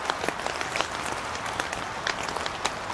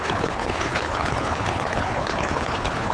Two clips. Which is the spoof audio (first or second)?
second